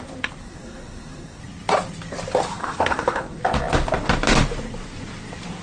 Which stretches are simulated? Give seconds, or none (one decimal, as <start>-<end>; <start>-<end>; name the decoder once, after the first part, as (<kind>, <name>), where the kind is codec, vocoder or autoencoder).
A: 0.4-1.4 (codec, SNAC); 2.6-3.4